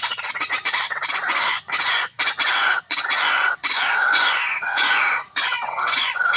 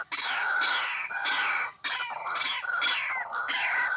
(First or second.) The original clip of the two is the second